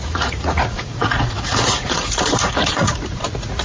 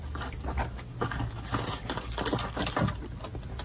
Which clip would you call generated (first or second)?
first